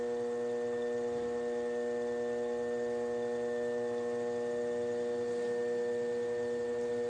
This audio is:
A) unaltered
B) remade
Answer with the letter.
A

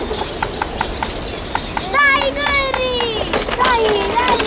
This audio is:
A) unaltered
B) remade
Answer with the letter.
A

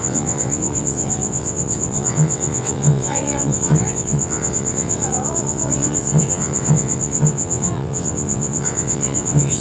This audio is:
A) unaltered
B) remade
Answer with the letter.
B